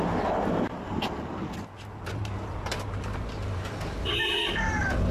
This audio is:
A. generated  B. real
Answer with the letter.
B